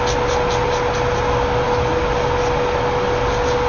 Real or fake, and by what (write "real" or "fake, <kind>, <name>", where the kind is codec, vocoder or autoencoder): real